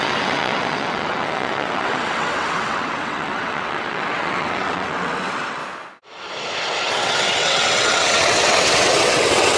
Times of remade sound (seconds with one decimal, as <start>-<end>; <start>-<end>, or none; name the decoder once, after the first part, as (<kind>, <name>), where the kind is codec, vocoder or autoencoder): 0.0-5.6 (vocoder, WaveNeXt); 6.9-9.6